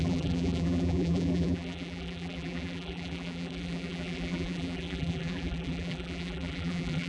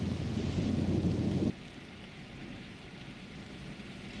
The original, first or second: second